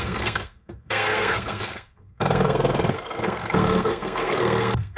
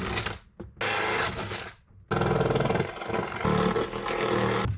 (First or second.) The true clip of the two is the second